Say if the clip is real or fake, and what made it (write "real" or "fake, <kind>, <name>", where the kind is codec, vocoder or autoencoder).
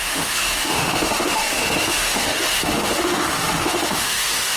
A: fake, autoencoder, DAC-VAE